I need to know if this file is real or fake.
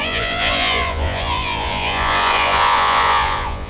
fake